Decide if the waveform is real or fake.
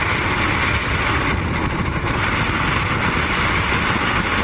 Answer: real